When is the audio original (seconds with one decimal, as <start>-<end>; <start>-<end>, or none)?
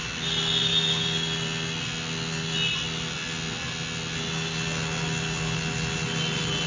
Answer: 0.0-6.7